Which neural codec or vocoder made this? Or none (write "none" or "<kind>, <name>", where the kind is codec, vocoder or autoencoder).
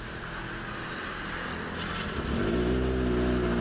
none